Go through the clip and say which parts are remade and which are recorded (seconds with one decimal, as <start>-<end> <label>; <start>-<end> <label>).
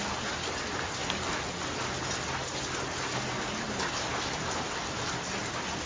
0.0-5.9 recorded